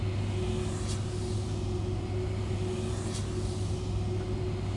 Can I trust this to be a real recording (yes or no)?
yes